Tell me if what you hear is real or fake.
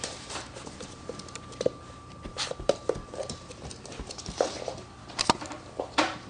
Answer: fake